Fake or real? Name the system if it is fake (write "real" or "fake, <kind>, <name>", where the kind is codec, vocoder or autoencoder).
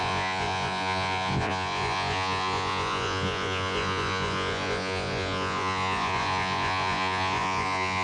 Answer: fake, vocoder, Vocos